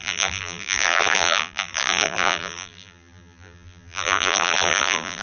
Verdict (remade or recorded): remade